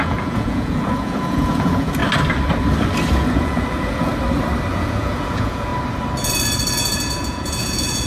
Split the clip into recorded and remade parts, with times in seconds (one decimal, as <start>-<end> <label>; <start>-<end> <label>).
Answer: 0.0-2.0 remade; 2.0-3.1 recorded; 3.1-4.1 remade; 4.1-4.7 recorded; 4.7-5.7 remade; 5.7-6.8 recorded; 6.8-8.1 remade